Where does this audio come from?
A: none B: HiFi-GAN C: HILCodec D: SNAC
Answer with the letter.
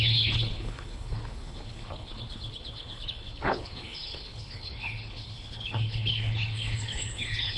C